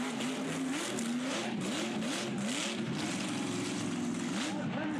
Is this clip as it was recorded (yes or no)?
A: yes